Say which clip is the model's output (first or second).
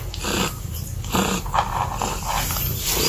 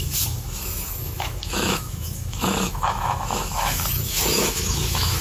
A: second